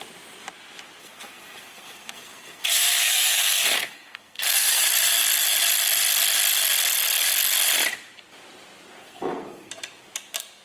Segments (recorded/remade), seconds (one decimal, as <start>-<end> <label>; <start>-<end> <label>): 0.0-1.0 recorded; 1.0-4.8 remade; 4.8-9.0 recorded; 9.0-9.7 remade; 9.7-10.6 recorded